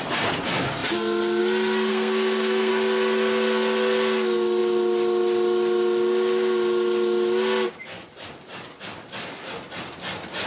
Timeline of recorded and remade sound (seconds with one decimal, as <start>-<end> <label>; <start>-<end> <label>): 0.0-1.9 recorded; 1.9-2.7 remade; 2.7-10.5 recorded